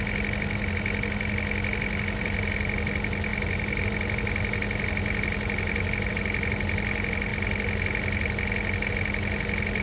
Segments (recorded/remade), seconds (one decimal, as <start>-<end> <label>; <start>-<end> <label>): 0.0-9.8 recorded